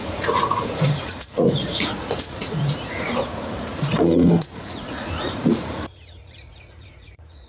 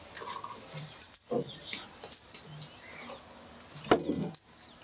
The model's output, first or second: first